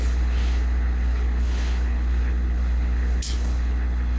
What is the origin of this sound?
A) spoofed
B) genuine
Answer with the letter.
A